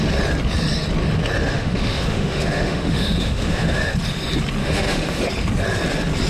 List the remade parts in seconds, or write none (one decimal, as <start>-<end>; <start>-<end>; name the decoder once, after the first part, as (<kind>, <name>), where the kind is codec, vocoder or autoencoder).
1.4-3.9 (autoencoder, DAC-VAE); 4.6-5.2